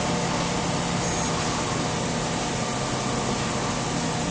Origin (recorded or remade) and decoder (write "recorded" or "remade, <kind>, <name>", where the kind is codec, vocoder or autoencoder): recorded